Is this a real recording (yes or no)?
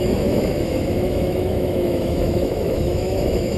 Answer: no